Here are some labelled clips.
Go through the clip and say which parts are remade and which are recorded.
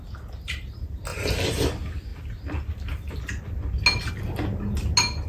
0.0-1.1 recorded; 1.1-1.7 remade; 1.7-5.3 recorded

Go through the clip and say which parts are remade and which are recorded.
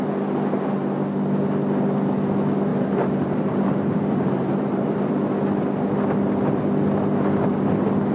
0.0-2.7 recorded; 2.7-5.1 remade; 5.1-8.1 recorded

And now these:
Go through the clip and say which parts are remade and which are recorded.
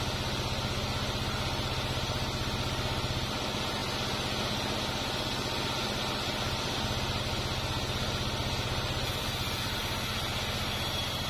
0.0-8.4 recorded; 8.4-9.8 remade; 9.8-11.3 recorded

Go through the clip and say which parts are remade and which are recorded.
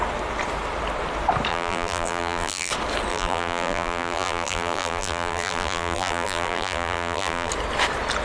0.0-1.5 recorded; 1.5-2.7 remade; 2.7-3.1 recorded; 3.1-7.5 remade; 7.5-8.2 recorded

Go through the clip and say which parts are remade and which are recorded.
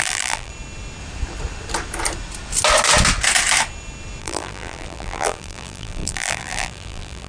0.0-0.5 remade; 0.5-4.2 recorded; 4.2-7.3 remade